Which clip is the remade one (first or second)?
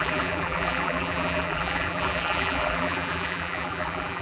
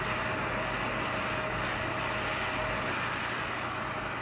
first